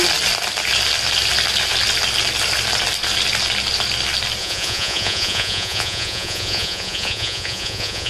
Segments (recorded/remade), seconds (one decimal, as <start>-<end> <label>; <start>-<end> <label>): 0.0-4.4 recorded; 4.4-8.1 remade